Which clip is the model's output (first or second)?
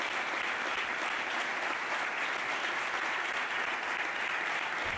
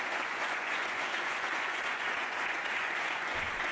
second